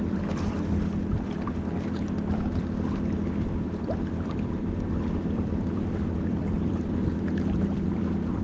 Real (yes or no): no